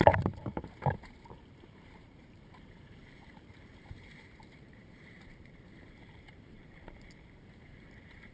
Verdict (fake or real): fake